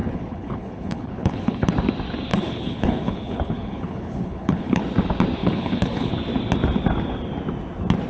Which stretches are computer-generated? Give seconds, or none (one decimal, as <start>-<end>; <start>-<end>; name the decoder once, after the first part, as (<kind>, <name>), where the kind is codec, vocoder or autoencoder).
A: 0.0-1.7 (codec, HILCodec); 2.3-4.8; 5.4-6.1